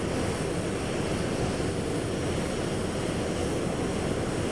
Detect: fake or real real